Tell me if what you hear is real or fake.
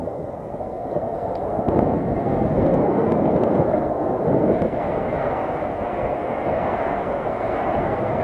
fake